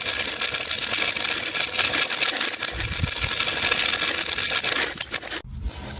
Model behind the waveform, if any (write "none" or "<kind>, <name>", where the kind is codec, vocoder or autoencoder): none